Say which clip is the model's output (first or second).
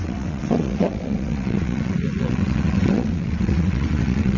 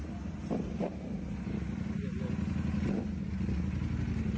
first